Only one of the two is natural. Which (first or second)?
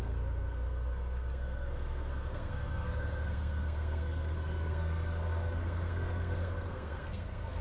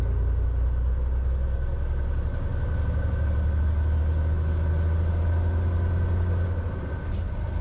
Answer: second